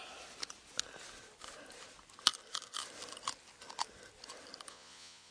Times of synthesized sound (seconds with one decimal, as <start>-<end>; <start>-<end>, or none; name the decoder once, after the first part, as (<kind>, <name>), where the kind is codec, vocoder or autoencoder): 4.7-5.3 (vocoder, Vocos)